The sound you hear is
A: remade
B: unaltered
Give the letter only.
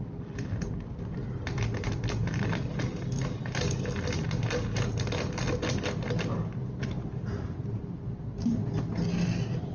B